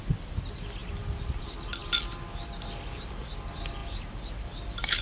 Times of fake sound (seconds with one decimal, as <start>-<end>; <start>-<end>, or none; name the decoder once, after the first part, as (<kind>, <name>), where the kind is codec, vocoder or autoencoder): none